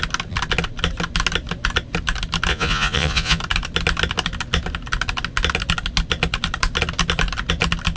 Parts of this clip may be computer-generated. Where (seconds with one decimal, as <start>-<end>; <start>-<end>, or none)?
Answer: 2.5-3.4